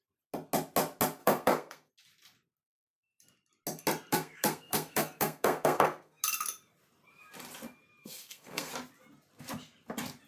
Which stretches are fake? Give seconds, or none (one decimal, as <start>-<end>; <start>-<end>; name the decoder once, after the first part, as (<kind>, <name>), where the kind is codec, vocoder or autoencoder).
1.2-1.9 (codec, SNAC); 4.1-6.2; 8.0-8.7